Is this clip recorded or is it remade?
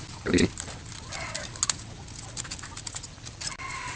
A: recorded